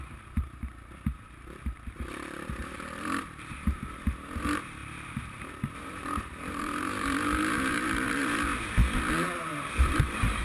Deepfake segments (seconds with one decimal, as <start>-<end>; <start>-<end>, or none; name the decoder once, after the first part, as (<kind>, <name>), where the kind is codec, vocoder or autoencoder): 0.0-8.5 (vocoder, BigVGAN v2); 9.1-10.4

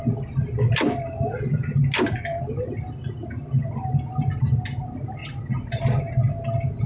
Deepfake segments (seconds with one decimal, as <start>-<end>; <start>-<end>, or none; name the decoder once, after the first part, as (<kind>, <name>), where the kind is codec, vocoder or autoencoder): 5.2-5.8 (vocoder, BigVGAN v2)

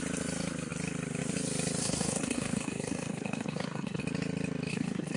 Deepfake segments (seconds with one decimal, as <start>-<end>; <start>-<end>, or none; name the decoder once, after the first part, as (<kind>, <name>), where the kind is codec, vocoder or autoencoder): 1.8-4.0 (codec, SNAC); 4.7-5.2